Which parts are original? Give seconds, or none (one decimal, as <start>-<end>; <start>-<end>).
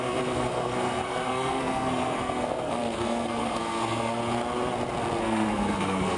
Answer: 4.2-5.2